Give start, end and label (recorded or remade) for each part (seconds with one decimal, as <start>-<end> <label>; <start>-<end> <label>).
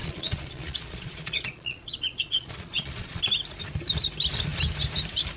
0.0-3.2 remade; 3.2-5.4 recorded